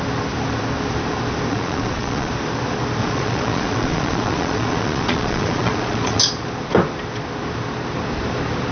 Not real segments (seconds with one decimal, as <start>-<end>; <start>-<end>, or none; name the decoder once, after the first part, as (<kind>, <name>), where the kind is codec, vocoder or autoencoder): 1.5-2.3 (vocoder, Vocos); 3.0-6.2